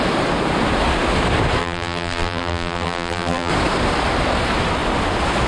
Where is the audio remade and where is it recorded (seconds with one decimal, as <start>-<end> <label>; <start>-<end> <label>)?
0.0-1.6 recorded; 1.6-3.5 remade; 3.5-5.5 recorded